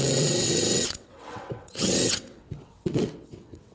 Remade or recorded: remade